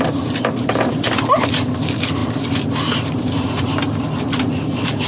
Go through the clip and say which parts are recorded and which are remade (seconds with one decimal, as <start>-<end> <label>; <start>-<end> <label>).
0.0-5.1 recorded